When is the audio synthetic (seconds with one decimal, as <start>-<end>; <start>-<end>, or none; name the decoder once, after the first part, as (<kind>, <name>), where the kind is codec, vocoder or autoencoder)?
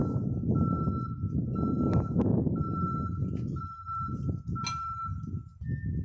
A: none